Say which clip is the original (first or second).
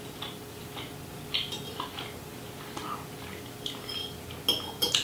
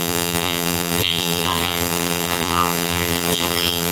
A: first